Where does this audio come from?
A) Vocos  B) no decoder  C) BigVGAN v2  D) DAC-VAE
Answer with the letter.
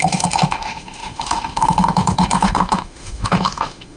D